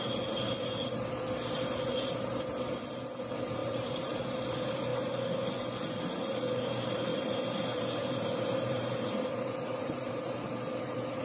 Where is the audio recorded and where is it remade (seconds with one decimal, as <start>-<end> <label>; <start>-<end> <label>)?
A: 0.0-3.6 recorded; 3.6-4.2 remade; 4.2-7.1 recorded; 7.1-11.2 remade